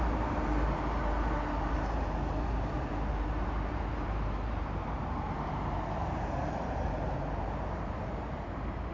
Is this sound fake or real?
fake